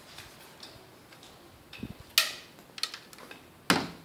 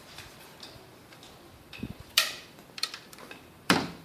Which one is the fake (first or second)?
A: second